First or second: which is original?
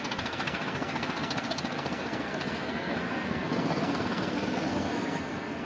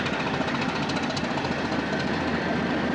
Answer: second